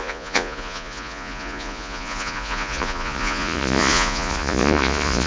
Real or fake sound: fake